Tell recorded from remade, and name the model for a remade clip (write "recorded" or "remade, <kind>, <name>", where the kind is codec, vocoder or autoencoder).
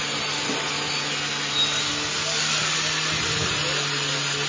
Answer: recorded